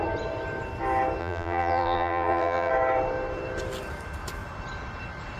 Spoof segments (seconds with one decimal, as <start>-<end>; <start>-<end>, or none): 1.2-2.7